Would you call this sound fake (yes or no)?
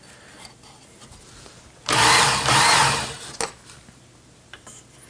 no